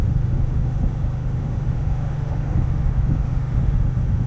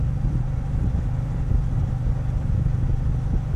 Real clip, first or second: second